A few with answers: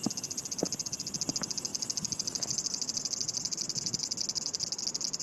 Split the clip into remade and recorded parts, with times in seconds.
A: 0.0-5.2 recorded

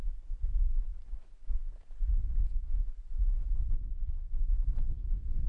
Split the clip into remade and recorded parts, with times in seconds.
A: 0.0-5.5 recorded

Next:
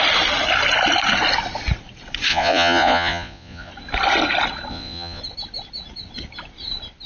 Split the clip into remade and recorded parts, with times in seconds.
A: 0.0-2.3 recorded; 2.3-3.7 remade; 3.7-4.7 recorded; 4.7-5.2 remade; 5.2-7.1 recorded